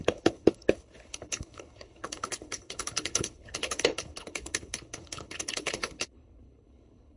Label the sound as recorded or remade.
remade